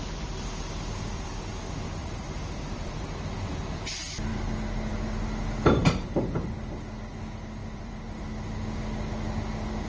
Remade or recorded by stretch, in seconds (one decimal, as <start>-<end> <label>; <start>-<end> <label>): 0.0-2.0 recorded; 2.0-3.0 remade; 3.0-5.8 recorded; 5.8-6.5 remade; 6.5-7.6 recorded; 7.6-8.2 remade; 8.2-9.9 recorded